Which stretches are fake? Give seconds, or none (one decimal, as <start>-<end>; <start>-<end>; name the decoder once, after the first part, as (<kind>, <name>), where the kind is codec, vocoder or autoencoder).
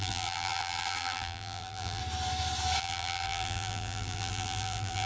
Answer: 0.0-2.0 (vocoder, BigVGAN v2); 2.8-5.1